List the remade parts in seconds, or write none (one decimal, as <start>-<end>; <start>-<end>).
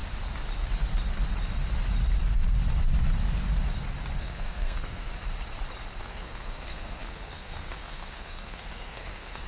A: 4.2-5.1; 6.0-9.5